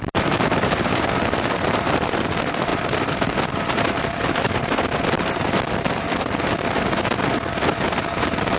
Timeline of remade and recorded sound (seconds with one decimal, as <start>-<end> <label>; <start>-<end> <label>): 0.0-8.6 remade